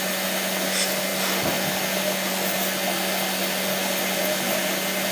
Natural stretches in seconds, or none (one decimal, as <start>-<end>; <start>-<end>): 0.0-5.1